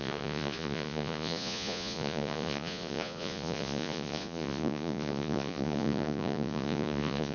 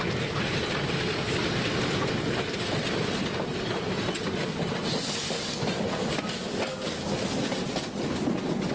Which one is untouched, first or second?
second